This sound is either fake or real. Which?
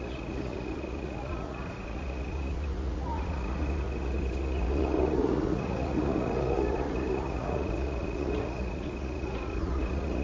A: fake